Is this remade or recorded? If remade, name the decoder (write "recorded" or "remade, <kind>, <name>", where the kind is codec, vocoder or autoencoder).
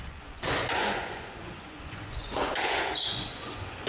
remade, vocoder, Vocos